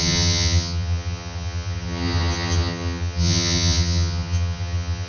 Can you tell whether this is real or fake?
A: fake